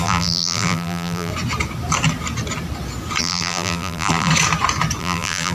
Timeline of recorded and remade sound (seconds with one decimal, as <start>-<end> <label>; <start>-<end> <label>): 0.0-1.3 remade; 1.3-3.2 recorded; 3.2-4.3 remade; 4.3-5.0 recorded; 5.0-5.5 remade